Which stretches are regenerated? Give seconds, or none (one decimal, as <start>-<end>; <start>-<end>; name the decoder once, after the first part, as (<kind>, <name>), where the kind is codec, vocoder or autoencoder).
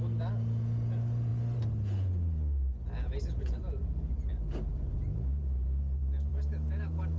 none